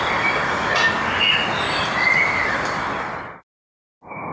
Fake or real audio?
real